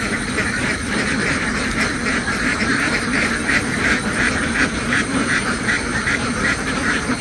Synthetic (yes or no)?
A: yes